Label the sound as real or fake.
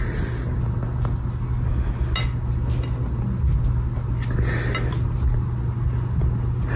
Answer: real